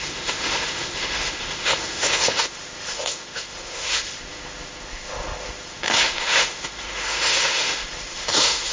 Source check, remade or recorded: remade